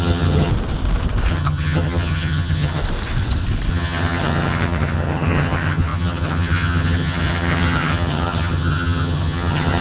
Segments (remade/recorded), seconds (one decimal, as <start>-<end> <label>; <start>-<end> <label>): 0.0-0.5 remade; 0.5-1.3 recorded; 1.3-2.8 remade; 2.8-3.7 recorded; 3.7-9.8 remade